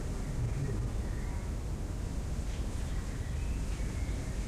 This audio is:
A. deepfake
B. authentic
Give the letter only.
B